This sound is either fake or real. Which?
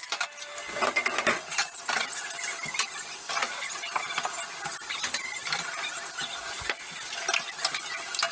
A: real